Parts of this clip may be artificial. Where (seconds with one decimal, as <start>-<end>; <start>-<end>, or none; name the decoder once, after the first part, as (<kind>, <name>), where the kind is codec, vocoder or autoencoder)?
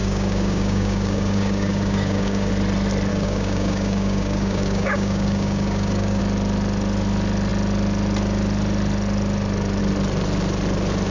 0.0-2.5 (codec, DAC); 3.1-6.2